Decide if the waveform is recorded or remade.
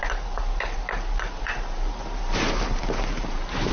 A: remade